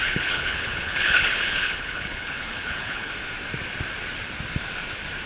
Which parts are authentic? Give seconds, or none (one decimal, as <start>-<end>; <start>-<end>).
3.1-5.3